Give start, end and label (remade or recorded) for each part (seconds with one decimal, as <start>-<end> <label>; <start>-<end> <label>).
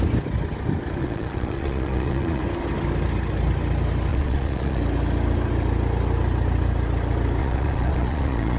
0.0-1.0 recorded; 1.0-2.4 remade; 2.4-4.1 recorded; 4.1-4.8 remade; 4.8-7.4 recorded; 7.4-8.6 remade